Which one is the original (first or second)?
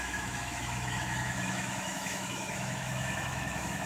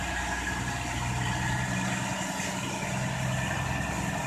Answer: second